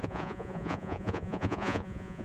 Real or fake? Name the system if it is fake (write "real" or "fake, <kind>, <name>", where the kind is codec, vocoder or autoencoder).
fake, vocoder, Vocos